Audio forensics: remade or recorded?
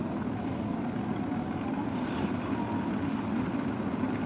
recorded